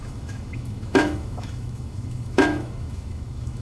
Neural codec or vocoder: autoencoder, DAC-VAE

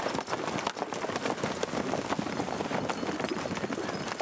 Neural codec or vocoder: none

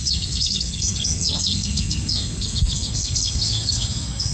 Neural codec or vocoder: codec, SNAC